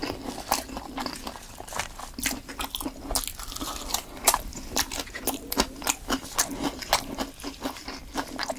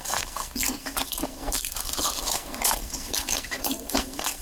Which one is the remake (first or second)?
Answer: second